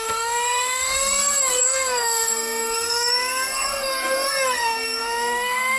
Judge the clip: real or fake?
fake